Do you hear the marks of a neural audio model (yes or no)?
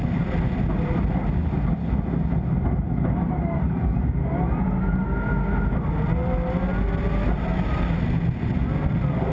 no